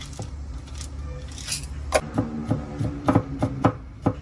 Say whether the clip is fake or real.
real